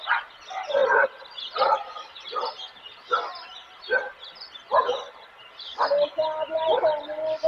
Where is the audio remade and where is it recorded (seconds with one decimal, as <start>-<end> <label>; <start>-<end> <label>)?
0.0-7.5 recorded

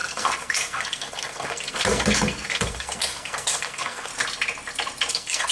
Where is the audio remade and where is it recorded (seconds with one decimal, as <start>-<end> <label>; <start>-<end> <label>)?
0.0-4.1 remade; 4.1-5.1 recorded; 5.1-5.5 remade

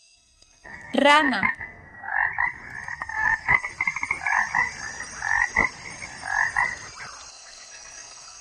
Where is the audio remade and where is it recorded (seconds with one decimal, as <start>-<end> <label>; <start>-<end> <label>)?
0.0-2.1 remade; 2.1-2.9 recorded; 2.9-3.7 remade; 3.7-7.3 recorded; 7.3-8.4 remade

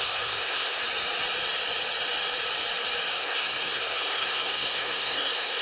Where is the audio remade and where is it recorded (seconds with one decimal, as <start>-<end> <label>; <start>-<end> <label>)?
0.0-0.8 remade; 0.8-3.1 recorded; 3.1-5.6 remade

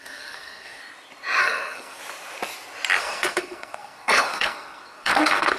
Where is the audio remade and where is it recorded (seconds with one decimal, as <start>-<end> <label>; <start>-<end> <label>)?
0.0-0.8 remade; 0.8-1.4 recorded; 1.4-2.0 remade; 2.0-3.0 recorded; 3.0-5.6 remade